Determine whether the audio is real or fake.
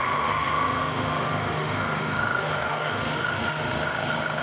fake